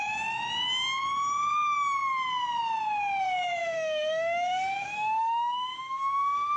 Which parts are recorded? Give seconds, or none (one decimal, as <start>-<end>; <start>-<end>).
0.0-3.6